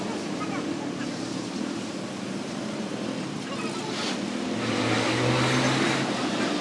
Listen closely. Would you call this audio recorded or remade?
recorded